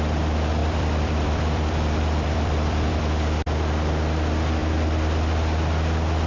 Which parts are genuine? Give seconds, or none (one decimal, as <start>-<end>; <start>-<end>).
0.0-0.6; 3.0-6.3

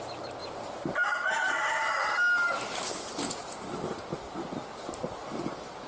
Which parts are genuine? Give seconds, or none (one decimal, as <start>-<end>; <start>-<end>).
0.0-5.9

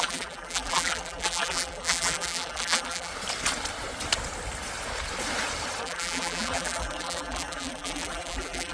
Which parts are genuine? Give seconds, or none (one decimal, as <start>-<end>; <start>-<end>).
3.1-5.8

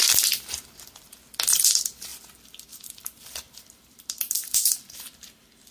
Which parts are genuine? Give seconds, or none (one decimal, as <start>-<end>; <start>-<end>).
0.0-2.1; 5.0-5.7

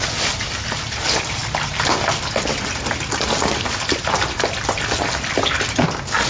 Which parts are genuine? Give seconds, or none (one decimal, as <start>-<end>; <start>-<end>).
0.0-6.3

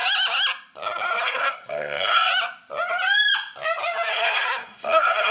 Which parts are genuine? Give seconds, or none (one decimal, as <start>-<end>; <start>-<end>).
0.0-1.2; 2.3-4.1

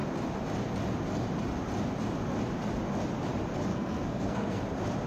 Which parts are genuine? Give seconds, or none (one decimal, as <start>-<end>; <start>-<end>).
0.0-3.7; 4.6-5.1

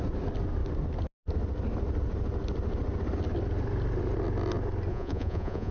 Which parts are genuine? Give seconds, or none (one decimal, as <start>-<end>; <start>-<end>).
0.0-4.9